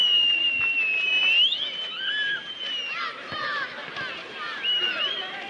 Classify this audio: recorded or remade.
recorded